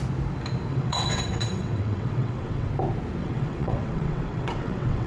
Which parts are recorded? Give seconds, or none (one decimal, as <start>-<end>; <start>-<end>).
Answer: 0.0-0.7; 2.7-3.2